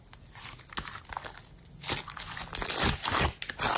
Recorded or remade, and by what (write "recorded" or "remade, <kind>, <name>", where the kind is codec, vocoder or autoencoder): recorded